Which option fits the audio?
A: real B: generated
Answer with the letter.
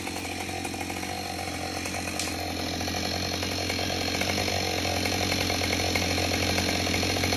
A